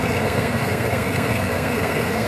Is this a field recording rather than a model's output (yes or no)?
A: no